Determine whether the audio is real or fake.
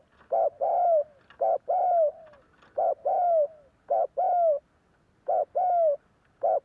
real